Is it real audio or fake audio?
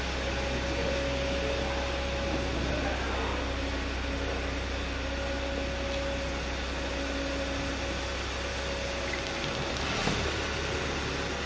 real